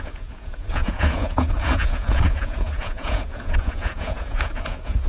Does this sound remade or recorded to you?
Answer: remade